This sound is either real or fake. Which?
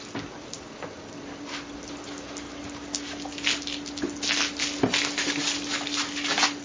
real